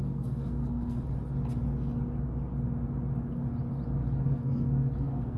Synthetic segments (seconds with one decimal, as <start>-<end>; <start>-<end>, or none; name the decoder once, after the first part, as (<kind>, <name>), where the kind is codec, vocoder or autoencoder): 0.0-1.0 (codec, SNAC); 4.2-5.4